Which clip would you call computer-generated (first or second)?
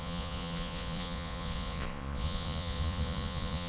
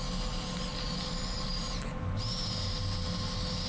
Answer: first